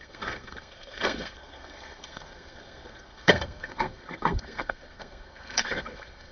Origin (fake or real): fake